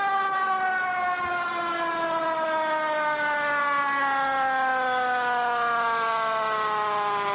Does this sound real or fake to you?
real